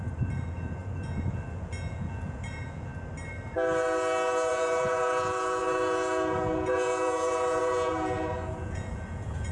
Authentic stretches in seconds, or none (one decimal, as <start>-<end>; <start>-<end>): 2.9-4.5